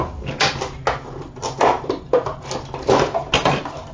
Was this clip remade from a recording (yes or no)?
no